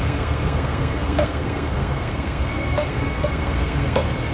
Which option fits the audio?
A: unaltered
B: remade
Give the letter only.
B